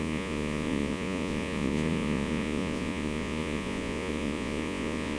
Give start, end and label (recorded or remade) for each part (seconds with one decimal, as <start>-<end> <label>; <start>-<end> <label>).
0.0-5.2 remade